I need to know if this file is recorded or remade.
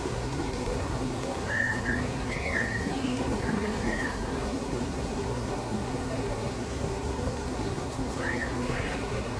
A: remade